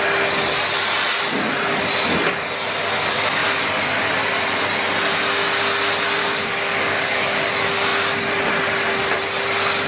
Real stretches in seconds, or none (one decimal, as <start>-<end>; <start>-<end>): 0.0-6.2; 7.5-9.9